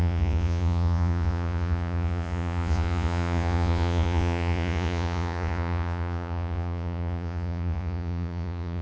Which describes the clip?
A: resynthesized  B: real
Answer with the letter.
A